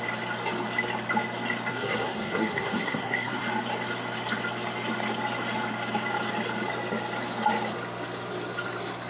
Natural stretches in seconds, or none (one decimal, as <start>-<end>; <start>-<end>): 0.0-1.7; 3.4-9.1